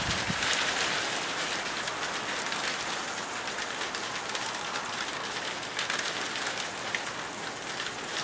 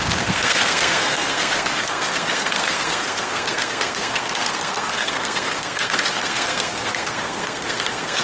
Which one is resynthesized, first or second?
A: second